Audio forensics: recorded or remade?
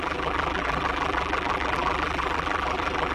remade